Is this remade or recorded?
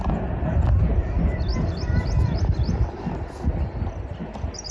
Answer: recorded